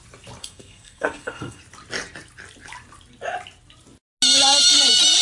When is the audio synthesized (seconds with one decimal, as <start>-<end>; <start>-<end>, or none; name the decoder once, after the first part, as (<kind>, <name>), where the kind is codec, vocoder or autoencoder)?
0.4-1.6 (codec, SNAC)